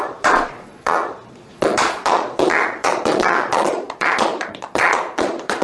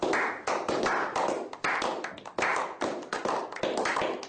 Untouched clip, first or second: second